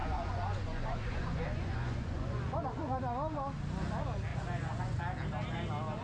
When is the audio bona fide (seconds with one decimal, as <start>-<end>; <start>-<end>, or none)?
3.0-4.3; 5.0-6.0